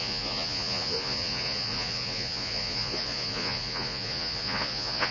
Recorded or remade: remade